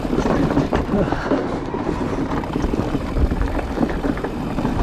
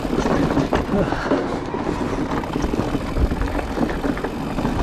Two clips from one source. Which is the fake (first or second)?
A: first